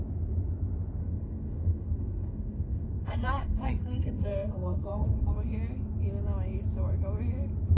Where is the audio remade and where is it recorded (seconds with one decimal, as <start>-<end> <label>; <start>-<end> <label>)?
0.0-1.0 recorded; 1.0-5.3 remade; 5.3-7.8 recorded